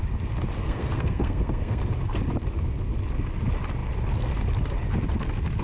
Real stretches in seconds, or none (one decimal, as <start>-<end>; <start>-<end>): 0.0-0.6; 1.8-5.6